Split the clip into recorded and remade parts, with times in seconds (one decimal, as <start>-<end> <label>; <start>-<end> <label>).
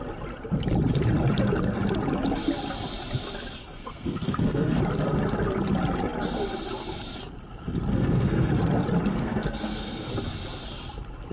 0.0-3.8 recorded; 3.8-4.8 remade; 4.8-7.9 recorded; 7.9-8.5 remade; 8.5-9.1 recorded; 9.1-10.1 remade; 10.1-11.3 recorded